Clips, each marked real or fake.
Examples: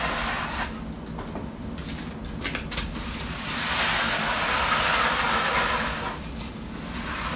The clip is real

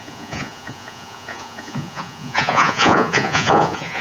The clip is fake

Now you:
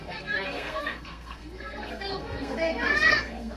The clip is fake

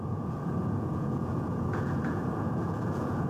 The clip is fake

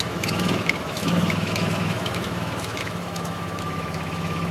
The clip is fake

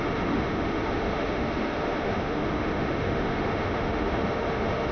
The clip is fake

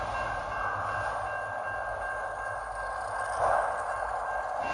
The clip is real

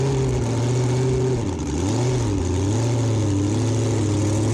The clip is real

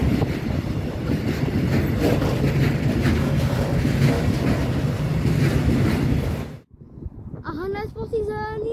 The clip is real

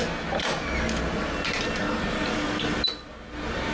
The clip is real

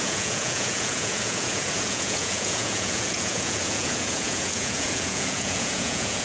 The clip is fake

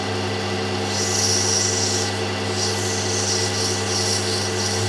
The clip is real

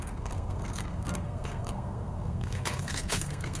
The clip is fake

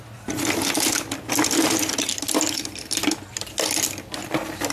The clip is real